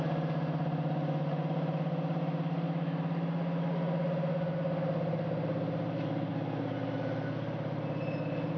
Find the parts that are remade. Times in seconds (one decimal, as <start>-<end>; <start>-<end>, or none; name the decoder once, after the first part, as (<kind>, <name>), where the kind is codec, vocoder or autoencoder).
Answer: none